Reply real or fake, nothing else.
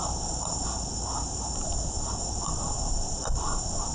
fake